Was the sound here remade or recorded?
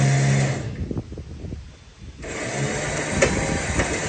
recorded